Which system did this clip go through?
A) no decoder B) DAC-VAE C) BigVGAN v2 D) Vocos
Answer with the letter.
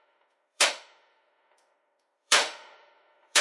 B